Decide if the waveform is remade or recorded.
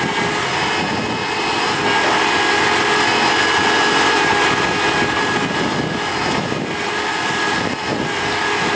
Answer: recorded